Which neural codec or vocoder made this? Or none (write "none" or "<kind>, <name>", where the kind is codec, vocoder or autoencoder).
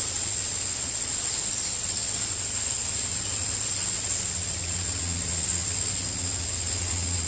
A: vocoder, Vocos